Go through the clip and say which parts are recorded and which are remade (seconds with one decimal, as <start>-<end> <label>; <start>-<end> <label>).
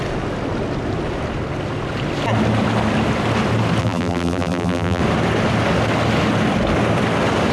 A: 0.0-3.8 recorded; 3.8-5.0 remade; 5.0-7.5 recorded